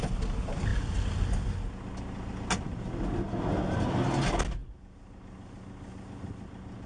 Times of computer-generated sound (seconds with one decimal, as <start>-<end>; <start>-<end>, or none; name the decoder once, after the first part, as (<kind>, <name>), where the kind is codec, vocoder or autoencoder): none

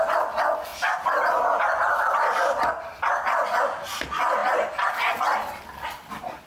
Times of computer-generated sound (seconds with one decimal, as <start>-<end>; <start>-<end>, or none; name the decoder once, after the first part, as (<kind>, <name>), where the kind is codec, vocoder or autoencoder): none